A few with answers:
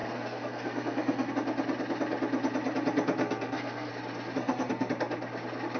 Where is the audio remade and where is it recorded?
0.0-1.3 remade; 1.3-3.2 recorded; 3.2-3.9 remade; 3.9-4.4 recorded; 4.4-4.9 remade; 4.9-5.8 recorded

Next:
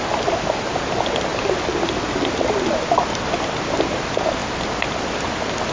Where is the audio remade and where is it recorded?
0.0-5.7 recorded

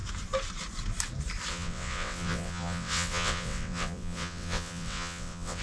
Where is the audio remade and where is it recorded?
0.0-1.5 recorded; 1.5-5.6 remade

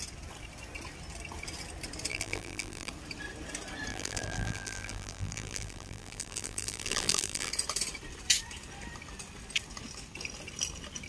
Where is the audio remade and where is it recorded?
0.0-2.1 recorded; 2.1-2.9 remade; 2.9-3.9 recorded; 3.9-7.5 remade; 7.5-11.1 recorded

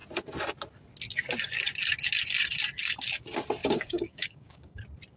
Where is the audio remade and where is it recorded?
0.0-3.6 recorded; 3.6-4.8 remade; 4.8-5.2 recorded

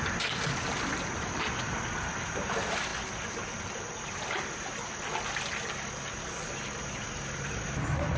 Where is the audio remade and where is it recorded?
0.0-8.2 recorded

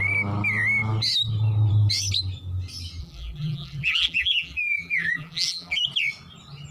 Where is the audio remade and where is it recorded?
0.0-3.0 recorded; 3.0-5.8 remade; 5.8-6.7 recorded

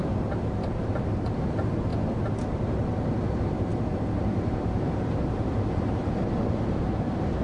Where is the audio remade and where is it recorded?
0.0-1.9 remade; 1.9-3.3 recorded; 3.3-7.4 remade